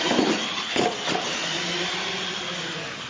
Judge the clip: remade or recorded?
recorded